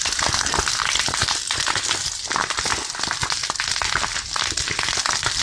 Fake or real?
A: real